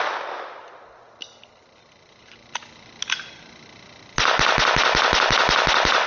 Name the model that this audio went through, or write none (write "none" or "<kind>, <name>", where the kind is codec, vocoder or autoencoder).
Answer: none